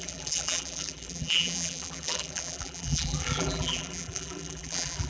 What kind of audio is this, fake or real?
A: fake